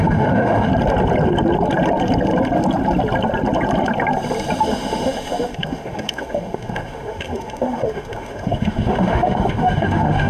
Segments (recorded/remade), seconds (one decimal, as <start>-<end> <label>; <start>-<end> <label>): 0.0-0.7 remade; 0.7-4.6 recorded; 4.6-10.3 remade